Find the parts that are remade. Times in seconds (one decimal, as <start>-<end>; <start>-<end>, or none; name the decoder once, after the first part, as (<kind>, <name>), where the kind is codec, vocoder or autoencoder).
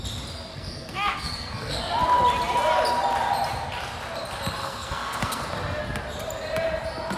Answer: 0.5-1.9 (codec, SNAC); 4.6-5.5